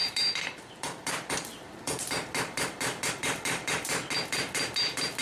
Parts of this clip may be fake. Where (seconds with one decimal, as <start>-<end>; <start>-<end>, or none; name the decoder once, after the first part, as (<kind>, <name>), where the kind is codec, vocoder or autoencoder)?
none